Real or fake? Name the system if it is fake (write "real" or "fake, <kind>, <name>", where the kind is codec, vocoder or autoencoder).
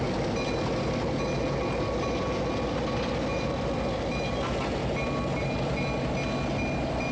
real